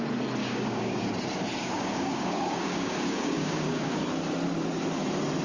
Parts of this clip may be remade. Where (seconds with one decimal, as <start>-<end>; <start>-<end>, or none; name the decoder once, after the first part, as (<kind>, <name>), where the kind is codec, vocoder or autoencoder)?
0.4-1.1 (codec, DAC); 1.6-4.0